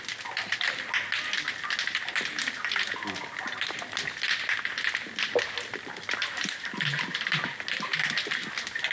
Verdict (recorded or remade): recorded